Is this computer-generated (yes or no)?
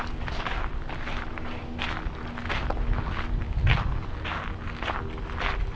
no